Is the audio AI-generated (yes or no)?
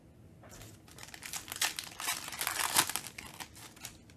no